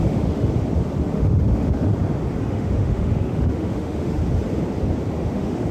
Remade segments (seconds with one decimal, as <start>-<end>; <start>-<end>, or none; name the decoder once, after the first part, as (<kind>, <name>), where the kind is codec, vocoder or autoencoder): 0.0-0.5 (autoencoder, DAC-VAE); 1.1-1.9; 2.4-4.2; 5.3-5.7

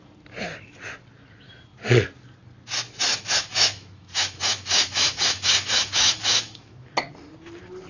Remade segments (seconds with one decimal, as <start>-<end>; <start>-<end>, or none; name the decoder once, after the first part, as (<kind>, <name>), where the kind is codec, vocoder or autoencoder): 3.1-6.9 (autoencoder, DAC-VAE)

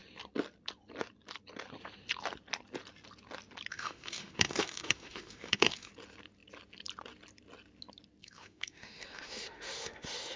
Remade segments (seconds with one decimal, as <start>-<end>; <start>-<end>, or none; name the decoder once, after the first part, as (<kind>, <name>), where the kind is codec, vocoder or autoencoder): 3.7-5.9 (autoencoder, DAC-VAE); 8.2-10.4

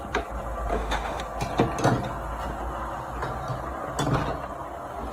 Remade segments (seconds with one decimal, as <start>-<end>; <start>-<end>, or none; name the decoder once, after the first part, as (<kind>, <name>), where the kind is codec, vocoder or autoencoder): 0.7-1.2 (autoencoder, DAC-VAE)

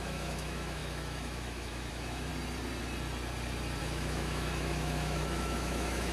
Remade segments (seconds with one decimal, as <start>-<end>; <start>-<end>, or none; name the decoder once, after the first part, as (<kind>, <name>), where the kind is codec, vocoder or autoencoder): 0.0-2.3 (autoencoder, DAC-VAE); 3.8-6.1

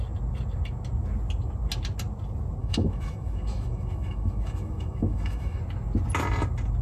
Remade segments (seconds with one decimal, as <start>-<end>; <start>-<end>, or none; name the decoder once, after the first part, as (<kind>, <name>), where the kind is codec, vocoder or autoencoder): 2.6-5.6 (autoencoder, DAC-VAE)

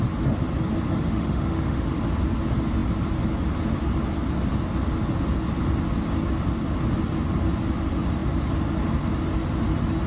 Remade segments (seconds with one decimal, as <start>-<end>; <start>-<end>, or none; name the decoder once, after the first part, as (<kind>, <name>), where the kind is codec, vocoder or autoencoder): 1.1-2.0 (autoencoder, DAC-VAE)

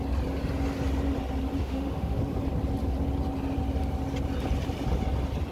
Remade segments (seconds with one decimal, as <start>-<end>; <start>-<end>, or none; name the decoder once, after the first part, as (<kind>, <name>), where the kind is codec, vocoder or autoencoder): 1.6-2.2 (autoencoder, DAC-VAE)